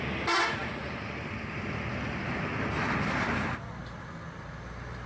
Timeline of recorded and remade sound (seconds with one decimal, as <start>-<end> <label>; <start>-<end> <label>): 0.0-0.6 recorded; 0.6-3.7 remade; 3.7-5.1 recorded